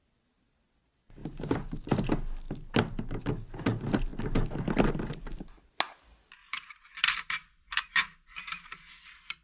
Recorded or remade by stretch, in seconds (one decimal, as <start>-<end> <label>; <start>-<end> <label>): 0.0-1.2 recorded; 1.2-1.9 remade; 1.9-6.4 recorded; 6.4-8.9 remade; 8.9-9.4 recorded